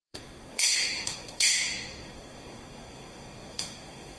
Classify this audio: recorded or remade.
remade